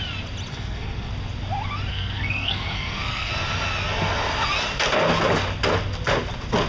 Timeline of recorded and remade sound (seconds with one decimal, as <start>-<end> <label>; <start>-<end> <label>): 0.0-0.5 recorded; 0.5-1.1 remade; 1.1-1.9 recorded; 1.9-3.3 remade; 3.3-6.7 recorded